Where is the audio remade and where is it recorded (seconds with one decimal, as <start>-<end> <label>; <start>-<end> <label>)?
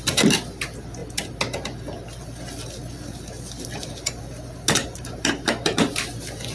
0.0-4.8 recorded; 4.8-5.9 remade; 5.9-6.5 recorded